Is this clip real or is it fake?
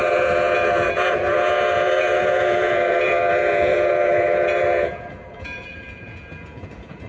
fake